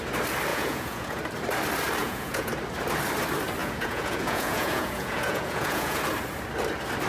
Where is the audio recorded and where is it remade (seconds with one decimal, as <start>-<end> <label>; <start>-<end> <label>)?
0.0-0.5 recorded; 0.5-1.2 remade; 1.2-2.0 recorded; 2.0-2.5 remade; 2.5-3.6 recorded; 3.6-6.0 remade; 6.0-7.1 recorded